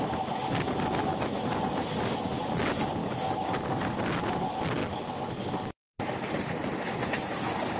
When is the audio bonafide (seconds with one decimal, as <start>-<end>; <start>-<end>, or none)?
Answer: 0.0-3.0; 4.0-4.8; 5.8-7.8